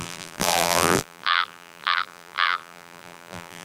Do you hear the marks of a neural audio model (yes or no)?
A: yes